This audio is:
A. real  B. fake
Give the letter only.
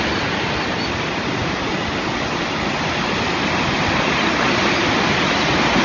A